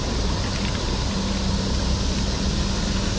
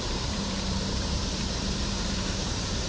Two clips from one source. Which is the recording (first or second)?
first